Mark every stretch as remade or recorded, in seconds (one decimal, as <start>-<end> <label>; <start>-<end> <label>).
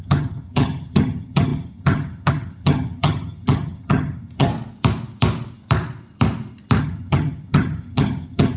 0.0-4.5 remade; 4.5-6.8 recorded; 6.8-8.6 remade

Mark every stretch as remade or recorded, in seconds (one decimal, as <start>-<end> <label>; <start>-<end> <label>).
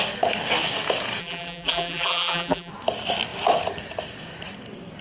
0.0-1.2 recorded; 1.2-2.7 remade; 2.7-5.0 recorded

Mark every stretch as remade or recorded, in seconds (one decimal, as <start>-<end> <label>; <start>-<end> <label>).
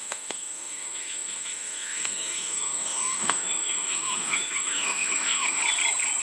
0.0-5.6 remade; 5.6-6.2 recorded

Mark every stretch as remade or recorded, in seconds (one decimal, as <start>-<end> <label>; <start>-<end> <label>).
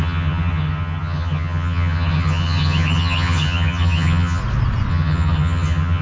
0.0-4.4 remade; 4.4-4.9 recorded; 4.9-6.0 remade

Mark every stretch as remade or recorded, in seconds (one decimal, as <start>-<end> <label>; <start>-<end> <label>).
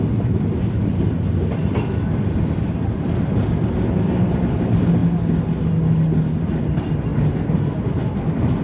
0.0-8.6 recorded